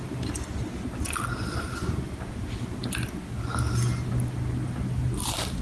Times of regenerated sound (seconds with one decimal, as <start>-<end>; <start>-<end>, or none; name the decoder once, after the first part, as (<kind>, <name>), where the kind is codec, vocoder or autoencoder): none